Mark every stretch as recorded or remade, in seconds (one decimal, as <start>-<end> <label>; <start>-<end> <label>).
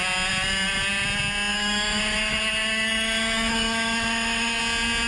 0.0-1.5 recorded; 1.5-4.6 remade; 4.6-5.1 recorded